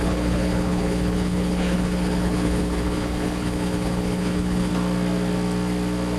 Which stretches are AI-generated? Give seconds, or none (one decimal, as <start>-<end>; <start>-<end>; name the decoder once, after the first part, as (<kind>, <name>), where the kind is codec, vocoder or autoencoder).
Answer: 0.0-4.7 (codec, HILCodec)